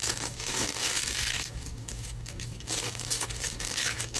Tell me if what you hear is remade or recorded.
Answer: remade